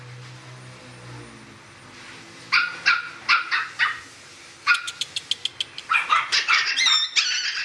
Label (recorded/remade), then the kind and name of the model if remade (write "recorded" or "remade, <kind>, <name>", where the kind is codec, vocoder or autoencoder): recorded